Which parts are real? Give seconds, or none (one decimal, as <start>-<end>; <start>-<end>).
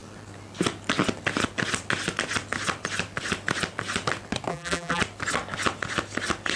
0.0-4.5; 5.0-6.6